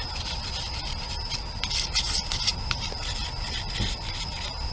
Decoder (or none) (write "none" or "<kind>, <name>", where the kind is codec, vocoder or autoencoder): none